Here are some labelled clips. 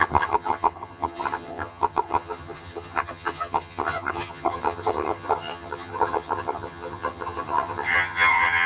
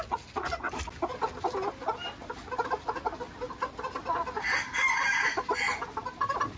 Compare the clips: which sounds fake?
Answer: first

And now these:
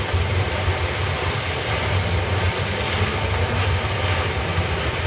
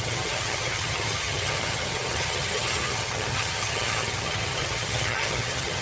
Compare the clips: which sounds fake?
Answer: second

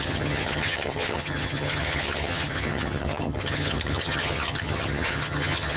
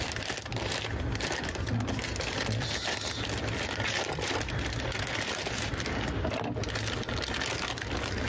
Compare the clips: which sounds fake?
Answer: first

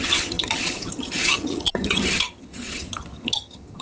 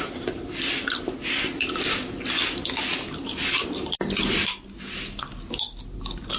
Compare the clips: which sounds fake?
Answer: first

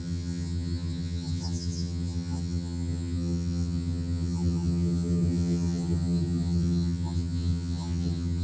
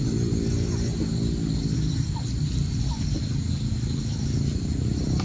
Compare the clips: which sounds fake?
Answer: first